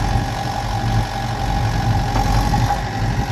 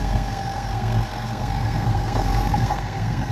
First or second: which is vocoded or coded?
second